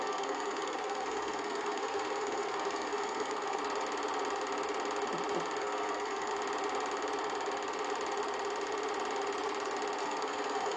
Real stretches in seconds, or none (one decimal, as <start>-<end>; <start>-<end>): 3.6-5.6; 6.3-10.0